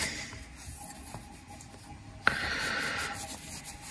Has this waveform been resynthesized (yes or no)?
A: no